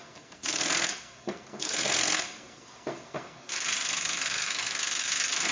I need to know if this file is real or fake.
fake